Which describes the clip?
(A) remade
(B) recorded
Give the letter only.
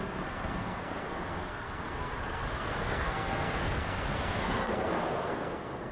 A